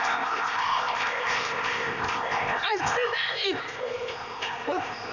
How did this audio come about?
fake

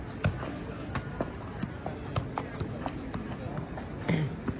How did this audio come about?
real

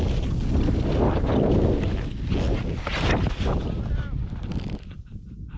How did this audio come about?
real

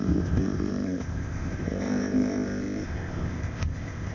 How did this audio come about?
fake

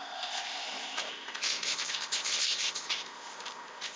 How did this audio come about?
fake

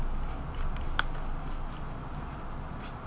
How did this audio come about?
real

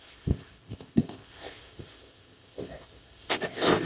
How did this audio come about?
fake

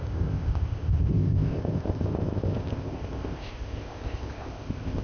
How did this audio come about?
fake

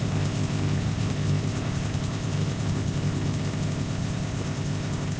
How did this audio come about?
fake